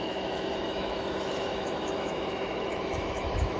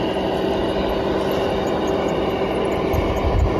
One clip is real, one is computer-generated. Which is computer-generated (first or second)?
first